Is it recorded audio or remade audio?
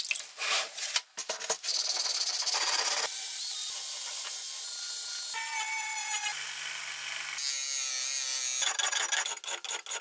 recorded